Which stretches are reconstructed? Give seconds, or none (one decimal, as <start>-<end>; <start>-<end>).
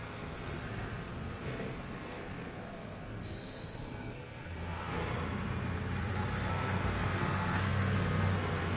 0.0-5.0; 6.5-8.8